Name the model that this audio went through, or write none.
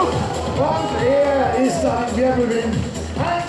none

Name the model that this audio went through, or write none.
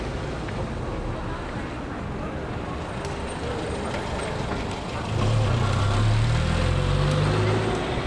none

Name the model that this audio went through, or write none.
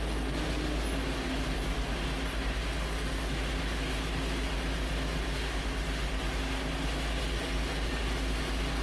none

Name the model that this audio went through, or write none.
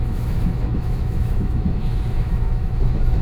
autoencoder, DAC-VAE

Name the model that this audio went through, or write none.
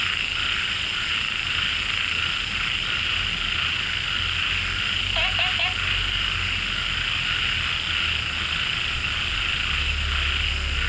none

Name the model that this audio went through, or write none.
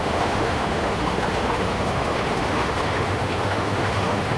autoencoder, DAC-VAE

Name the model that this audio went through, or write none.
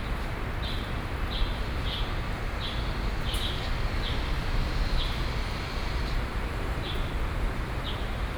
none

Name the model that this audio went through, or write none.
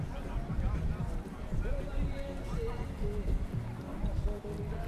none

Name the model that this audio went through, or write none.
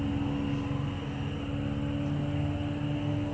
none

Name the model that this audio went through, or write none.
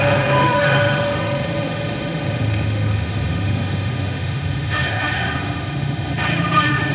autoencoder, DAC-VAE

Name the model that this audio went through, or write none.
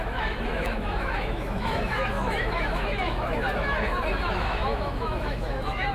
autoencoder, DAC-VAE